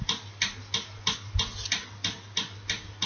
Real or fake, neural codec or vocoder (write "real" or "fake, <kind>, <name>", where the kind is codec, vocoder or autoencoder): real